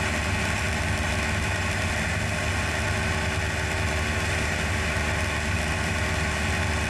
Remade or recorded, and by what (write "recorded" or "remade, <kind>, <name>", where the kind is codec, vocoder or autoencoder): recorded